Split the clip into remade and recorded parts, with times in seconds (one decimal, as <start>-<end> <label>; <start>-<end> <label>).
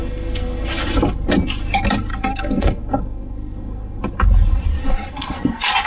0.0-0.7 remade; 0.7-2.1 recorded; 2.1-4.0 remade; 4.0-4.8 recorded; 4.8-5.9 remade